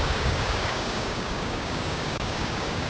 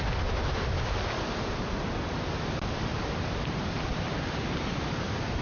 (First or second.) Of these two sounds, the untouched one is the second